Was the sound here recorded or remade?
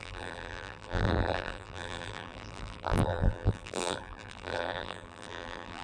remade